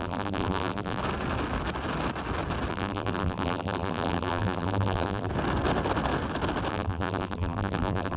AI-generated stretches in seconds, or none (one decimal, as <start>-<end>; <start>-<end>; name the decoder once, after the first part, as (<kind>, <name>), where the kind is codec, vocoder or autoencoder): 0.0-1.0 (vocoder, BigVGAN v2); 2.7-5.3; 6.7-8.2